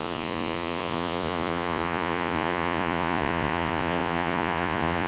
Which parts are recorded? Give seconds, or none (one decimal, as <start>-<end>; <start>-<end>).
none